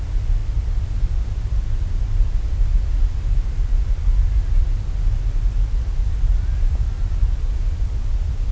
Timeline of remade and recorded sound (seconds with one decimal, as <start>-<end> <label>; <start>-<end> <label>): 0.0-4.6 remade; 4.6-6.4 recorded; 6.4-8.5 remade